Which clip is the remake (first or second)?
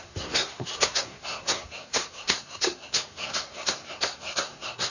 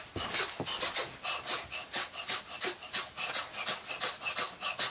first